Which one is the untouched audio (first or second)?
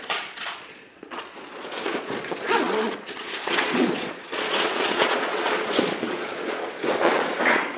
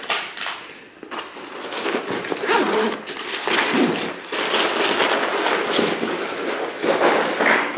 second